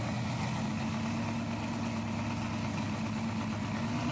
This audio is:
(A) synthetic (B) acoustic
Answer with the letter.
B